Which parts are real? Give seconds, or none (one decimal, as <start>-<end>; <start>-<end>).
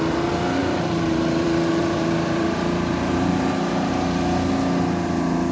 0.0-0.6; 3.9-5.5